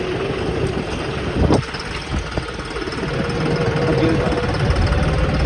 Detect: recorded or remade recorded